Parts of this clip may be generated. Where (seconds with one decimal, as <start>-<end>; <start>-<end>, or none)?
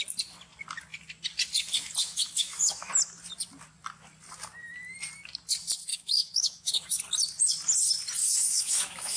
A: 2.0-2.9; 5.9-7.0; 8.2-9.2